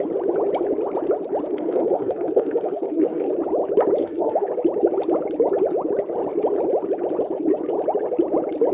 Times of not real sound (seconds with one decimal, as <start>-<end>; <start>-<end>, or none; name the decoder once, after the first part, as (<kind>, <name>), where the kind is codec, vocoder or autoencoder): 1.5-3.3 (codec, SNAC); 4.0-4.5